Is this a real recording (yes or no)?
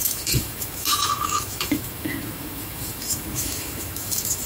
no